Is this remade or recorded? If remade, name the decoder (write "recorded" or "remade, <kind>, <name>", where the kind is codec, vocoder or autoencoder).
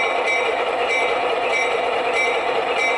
remade, vocoder, BigVGAN v2